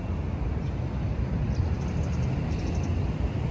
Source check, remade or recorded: recorded